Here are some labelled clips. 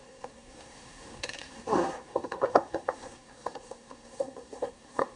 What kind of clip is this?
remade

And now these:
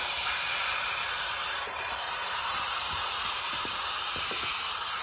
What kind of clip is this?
remade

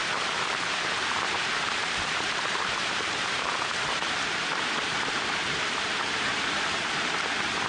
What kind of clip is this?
remade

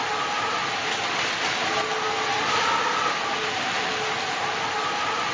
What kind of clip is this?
recorded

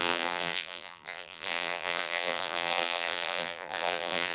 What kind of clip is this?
remade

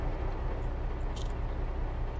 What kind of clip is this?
recorded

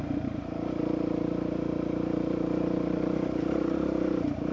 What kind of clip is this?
remade